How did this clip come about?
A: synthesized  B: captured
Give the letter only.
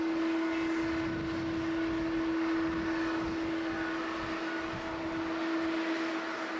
B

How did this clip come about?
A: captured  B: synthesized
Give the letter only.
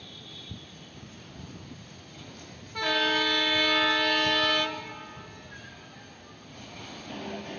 A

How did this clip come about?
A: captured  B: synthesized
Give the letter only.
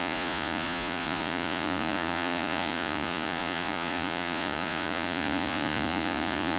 B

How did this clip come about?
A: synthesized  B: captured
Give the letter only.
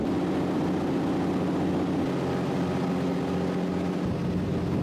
B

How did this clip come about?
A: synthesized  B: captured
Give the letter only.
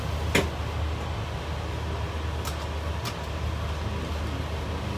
B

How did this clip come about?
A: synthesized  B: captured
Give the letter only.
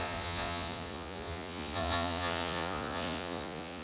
A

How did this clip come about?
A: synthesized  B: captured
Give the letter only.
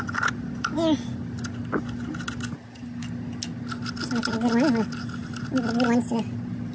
B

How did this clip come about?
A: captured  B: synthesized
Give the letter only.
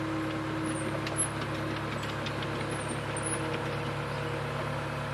A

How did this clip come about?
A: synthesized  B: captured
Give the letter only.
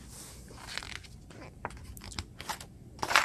B